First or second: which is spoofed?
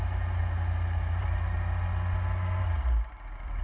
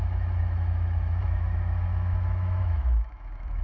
second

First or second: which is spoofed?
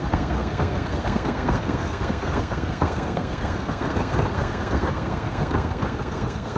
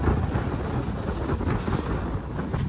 first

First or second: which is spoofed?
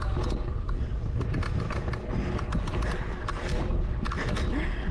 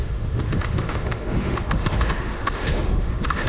second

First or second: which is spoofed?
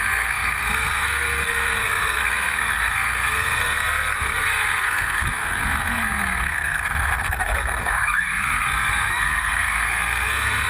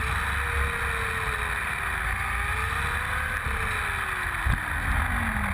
first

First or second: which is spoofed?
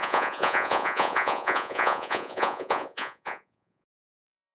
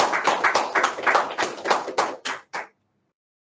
first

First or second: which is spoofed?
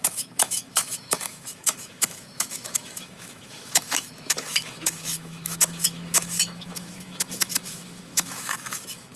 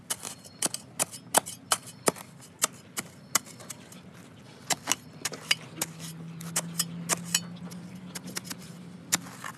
first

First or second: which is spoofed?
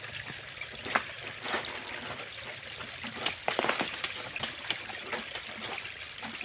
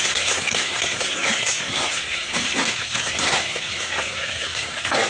second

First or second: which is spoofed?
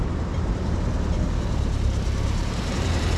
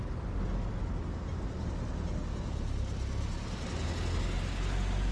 first